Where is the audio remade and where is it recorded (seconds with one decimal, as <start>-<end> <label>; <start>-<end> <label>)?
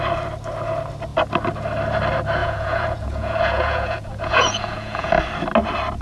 0.0-2.4 recorded; 2.4-5.1 remade; 5.1-6.0 recorded